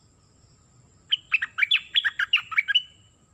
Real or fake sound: real